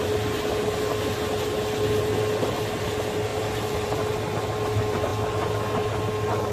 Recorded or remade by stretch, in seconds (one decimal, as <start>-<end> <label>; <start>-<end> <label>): 0.0-3.3 recorded; 3.3-4.1 remade; 4.1-6.5 recorded